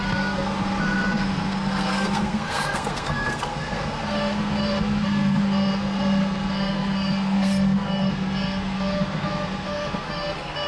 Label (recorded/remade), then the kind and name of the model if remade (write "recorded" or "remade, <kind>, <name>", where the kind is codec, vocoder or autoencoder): remade, codec, SNAC